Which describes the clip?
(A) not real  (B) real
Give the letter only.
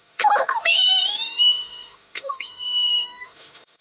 A